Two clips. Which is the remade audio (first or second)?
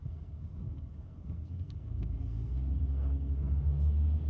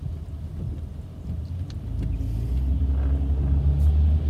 first